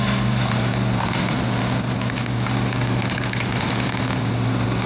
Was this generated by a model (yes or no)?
no